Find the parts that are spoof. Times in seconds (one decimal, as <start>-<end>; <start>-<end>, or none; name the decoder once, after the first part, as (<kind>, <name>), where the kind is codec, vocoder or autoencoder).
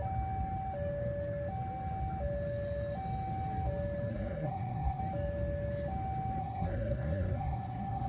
4.1-5.0 (codec, SNAC); 6.4-8.1